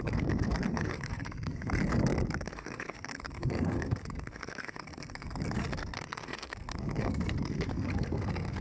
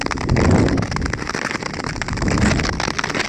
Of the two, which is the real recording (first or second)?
second